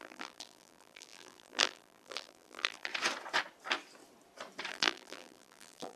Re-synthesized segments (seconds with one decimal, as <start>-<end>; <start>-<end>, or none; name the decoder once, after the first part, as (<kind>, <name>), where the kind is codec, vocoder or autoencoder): 0.0-2.9 (vocoder, BigVGAN v2); 4.7-6.0